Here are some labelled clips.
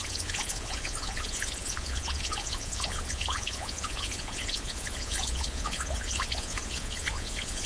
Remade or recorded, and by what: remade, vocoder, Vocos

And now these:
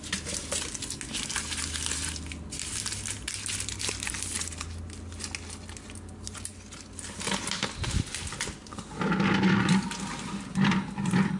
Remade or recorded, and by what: recorded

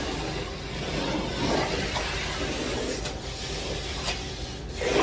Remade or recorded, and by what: recorded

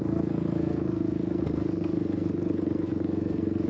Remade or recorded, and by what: remade, codec, SNAC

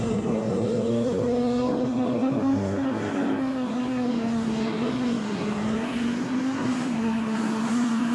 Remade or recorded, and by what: remade, codec, SNAC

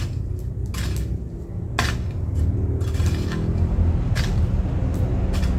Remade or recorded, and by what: recorded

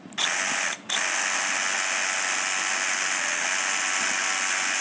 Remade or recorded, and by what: recorded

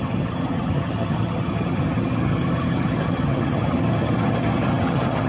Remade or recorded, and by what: remade, vocoder, HiFi-GAN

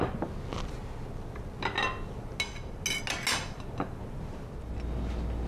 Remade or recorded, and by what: recorded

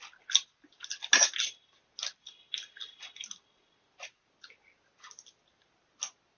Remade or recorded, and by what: recorded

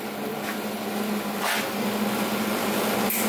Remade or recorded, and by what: recorded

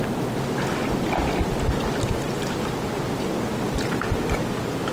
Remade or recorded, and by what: recorded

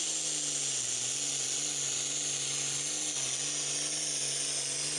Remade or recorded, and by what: recorded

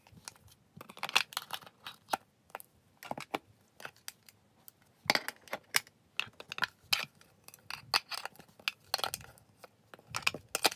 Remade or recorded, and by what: recorded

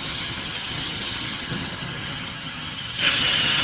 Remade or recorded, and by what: remade, vocoder, HiFi-GAN